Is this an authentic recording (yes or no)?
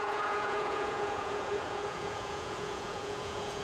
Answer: no